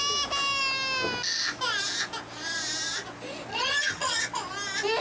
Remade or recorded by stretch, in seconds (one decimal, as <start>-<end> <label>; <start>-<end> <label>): 0.0-3.5 recorded; 3.5-4.2 remade; 4.2-5.0 recorded